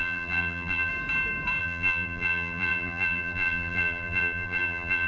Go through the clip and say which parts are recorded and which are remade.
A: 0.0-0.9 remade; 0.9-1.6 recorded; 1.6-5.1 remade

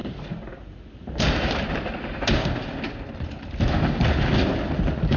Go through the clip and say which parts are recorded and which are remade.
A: 0.0-2.2 remade; 2.2-5.2 recorded

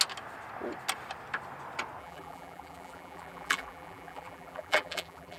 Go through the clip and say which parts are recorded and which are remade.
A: 0.0-2.0 recorded; 2.0-5.4 remade

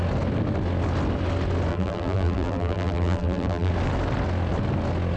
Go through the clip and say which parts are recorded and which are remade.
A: 0.0-1.7 recorded; 1.7-3.7 remade; 3.7-5.2 recorded

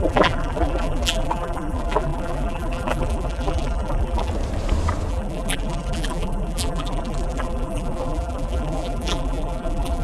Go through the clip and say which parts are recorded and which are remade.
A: 0.0-4.3 remade; 4.3-5.1 recorded; 5.1-10.0 remade

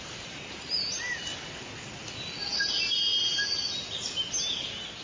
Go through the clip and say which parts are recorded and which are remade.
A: 0.0-1.3 remade; 1.3-2.6 recorded; 2.6-3.1 remade; 3.1-3.7 recorded; 3.7-5.0 remade

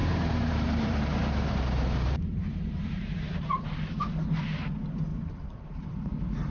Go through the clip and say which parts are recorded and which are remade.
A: 0.0-3.8 remade; 3.8-5.1 recorded; 5.1-6.1 remade; 6.1-6.5 recorded